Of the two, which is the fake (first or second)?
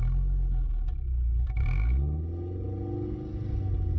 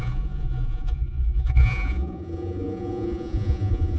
second